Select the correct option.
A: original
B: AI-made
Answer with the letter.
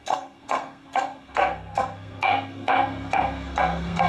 B